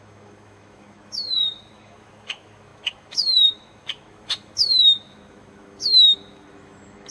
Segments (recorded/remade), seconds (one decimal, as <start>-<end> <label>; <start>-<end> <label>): 0.0-7.1 remade